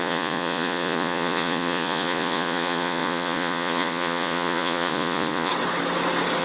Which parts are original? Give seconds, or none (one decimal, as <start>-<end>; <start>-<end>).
5.5-6.4